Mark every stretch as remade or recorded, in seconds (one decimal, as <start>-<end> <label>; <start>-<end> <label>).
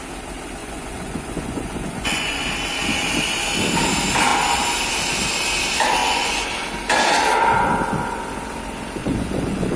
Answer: 0.0-0.6 recorded; 0.6-2.4 remade; 2.4-6.0 recorded; 6.0-6.5 remade; 6.5-9.0 recorded; 9.0-9.8 remade